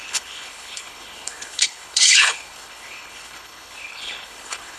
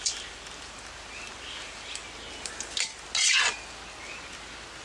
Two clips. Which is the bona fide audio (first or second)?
second